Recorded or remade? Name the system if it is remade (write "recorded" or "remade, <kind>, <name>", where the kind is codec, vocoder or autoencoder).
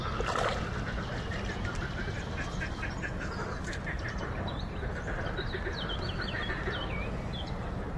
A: recorded